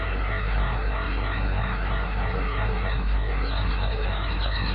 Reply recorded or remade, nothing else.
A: remade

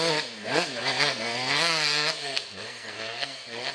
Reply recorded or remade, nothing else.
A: remade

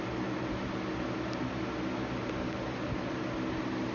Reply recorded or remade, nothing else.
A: recorded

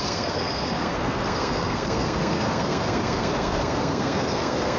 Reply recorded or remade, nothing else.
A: remade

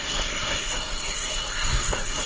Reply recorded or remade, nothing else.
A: remade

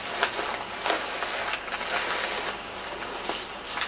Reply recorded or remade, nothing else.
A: recorded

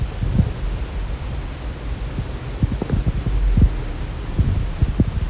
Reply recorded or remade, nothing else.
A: recorded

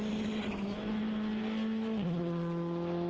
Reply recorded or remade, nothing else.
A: recorded